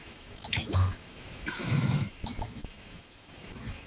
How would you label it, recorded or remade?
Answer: remade